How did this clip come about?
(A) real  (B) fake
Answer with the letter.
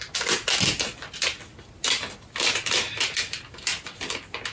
A